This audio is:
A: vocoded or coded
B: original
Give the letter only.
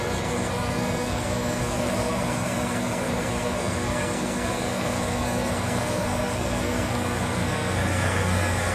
A